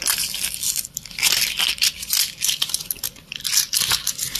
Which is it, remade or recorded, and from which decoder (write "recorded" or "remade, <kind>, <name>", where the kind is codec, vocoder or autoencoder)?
recorded